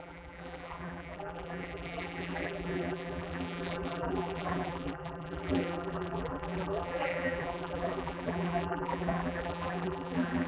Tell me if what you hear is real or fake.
fake